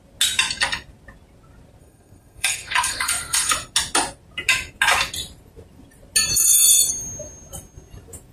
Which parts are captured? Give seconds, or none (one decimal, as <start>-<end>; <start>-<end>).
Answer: 0.0-1.8; 3.5-6.3; 6.9-8.3

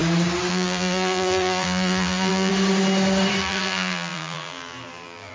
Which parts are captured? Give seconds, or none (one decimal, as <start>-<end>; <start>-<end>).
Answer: 0.0-0.5; 2.5-3.4